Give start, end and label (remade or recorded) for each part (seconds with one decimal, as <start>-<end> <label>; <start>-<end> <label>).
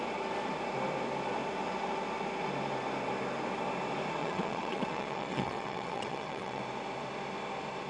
0.0-4.2 recorded; 4.2-6.6 remade; 6.6-7.9 recorded